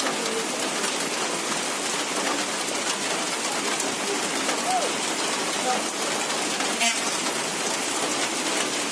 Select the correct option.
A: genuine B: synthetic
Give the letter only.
A